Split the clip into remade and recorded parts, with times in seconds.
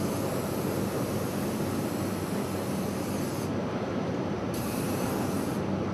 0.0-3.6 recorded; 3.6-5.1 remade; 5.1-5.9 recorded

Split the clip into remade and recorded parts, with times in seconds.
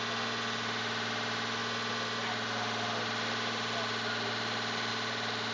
0.0-5.5 recorded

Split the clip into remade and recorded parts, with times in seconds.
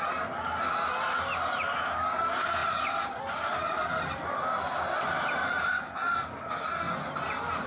0.0-2.6 recorded; 2.6-3.8 remade; 3.8-7.7 recorded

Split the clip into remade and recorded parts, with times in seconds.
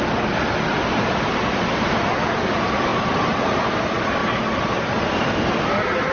0.0-2.9 recorded; 2.9-3.8 remade; 3.8-4.2 recorded; 4.2-4.9 remade; 4.9-6.1 recorded